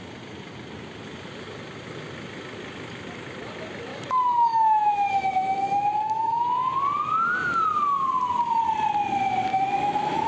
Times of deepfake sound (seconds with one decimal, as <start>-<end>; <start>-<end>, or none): 3.9-6.8; 9.5-10.3